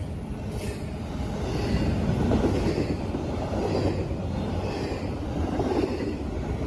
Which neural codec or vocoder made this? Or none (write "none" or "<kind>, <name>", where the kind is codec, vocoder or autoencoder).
none